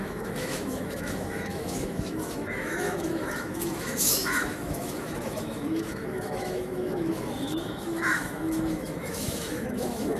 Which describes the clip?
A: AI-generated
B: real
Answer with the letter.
A